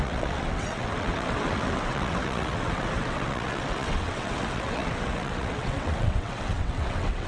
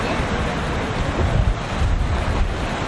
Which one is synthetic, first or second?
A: first